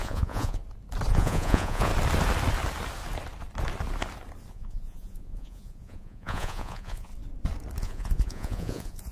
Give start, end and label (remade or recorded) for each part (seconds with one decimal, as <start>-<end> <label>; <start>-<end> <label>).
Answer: 0.0-0.6 remade; 0.6-1.1 recorded; 1.1-1.9 remade; 1.9-4.5 recorded; 4.5-7.1 remade; 7.1-7.8 recorded; 7.8-9.1 remade